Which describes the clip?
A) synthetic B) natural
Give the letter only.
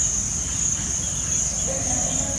B